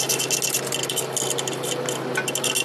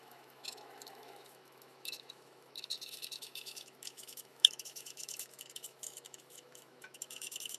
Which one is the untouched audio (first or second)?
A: first